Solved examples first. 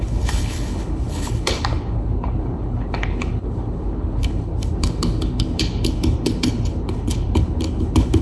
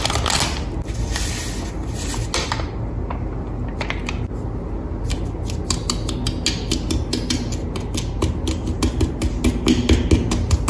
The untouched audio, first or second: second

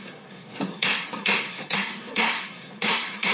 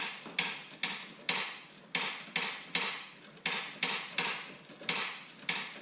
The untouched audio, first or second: second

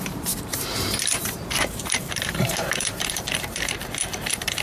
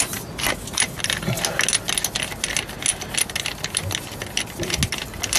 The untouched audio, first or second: second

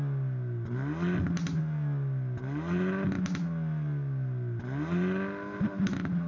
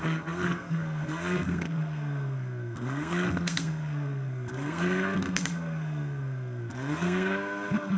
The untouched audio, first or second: first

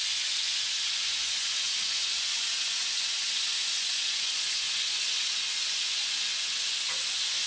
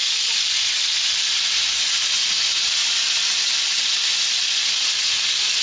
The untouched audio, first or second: second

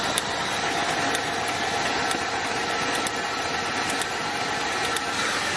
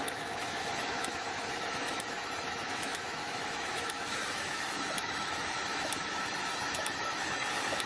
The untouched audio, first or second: first